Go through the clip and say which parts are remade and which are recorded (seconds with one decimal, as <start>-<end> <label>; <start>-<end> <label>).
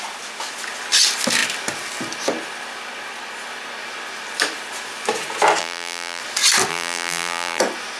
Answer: 0.0-5.6 recorded; 5.6-6.2 remade; 6.2-6.7 recorded; 6.7-7.6 remade; 7.6-8.0 recorded